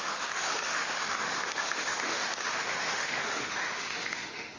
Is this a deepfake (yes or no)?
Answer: yes